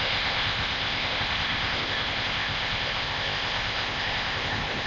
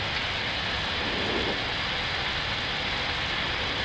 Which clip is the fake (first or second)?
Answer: first